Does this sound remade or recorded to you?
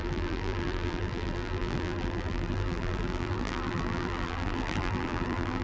remade